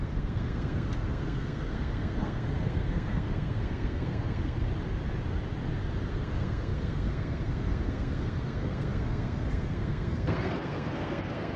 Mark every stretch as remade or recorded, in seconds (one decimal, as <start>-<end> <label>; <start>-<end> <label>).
0.0-4.7 remade; 4.7-6.1 recorded; 6.1-11.6 remade